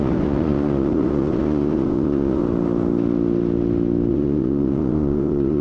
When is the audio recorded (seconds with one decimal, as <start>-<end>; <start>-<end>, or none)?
2.4-4.1

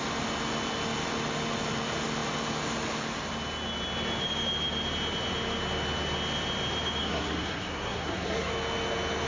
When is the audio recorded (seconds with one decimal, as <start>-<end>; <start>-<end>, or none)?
0.0-7.0; 8.5-9.3

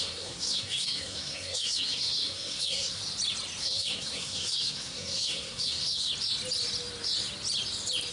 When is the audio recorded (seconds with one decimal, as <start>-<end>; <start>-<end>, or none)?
3.0-3.6; 6.1-8.1